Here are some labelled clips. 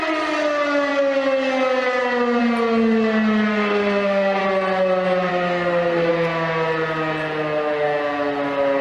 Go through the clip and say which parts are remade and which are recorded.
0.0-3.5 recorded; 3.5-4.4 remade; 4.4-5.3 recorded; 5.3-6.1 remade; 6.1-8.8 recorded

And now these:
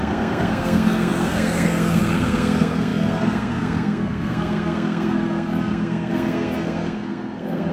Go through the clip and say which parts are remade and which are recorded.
0.0-7.7 remade

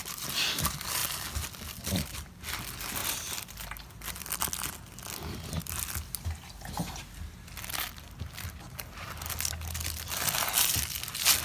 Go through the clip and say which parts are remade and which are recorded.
0.0-11.4 recorded

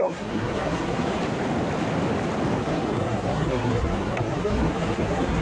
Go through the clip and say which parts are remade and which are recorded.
0.0-1.2 remade; 1.2-2.6 recorded; 2.6-5.4 remade

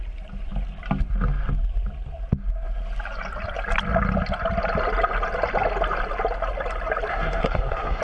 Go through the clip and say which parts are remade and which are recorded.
0.0-7.1 recorded; 7.1-8.0 remade

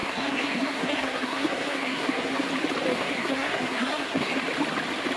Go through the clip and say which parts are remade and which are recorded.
0.0-2.5 remade; 2.5-2.9 recorded; 2.9-4.3 remade; 4.3-5.2 recorded